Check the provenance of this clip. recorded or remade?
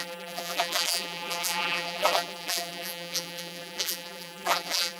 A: remade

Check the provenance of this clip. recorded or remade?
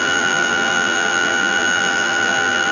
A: remade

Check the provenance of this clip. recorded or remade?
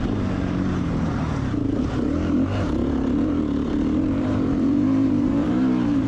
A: remade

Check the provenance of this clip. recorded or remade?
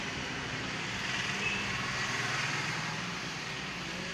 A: remade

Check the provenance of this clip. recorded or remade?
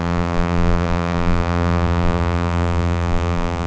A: remade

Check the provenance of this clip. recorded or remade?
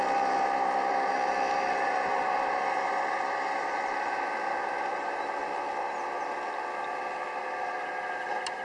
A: remade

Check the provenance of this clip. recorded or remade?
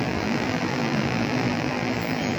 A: remade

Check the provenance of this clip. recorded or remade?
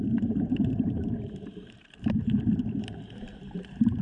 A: remade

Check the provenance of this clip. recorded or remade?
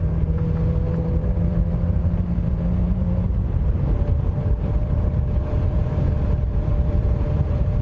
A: remade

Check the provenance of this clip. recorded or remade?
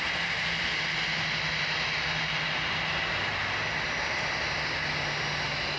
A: recorded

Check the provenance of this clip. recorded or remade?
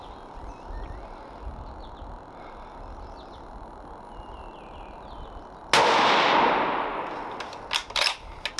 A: recorded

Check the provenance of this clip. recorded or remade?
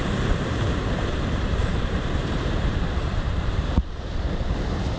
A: remade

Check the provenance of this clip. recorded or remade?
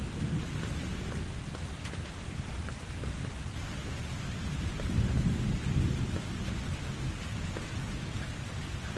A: recorded